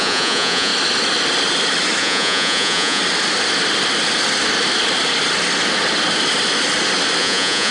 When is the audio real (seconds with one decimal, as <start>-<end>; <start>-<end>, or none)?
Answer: 0.7-2.0; 3.0-7.2